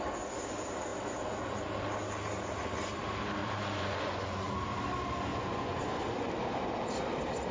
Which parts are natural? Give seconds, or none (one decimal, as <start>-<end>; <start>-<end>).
0.0-3.4; 4.5-5.3; 5.8-7.5